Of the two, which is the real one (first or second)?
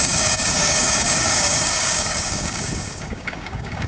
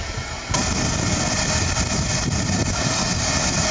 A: second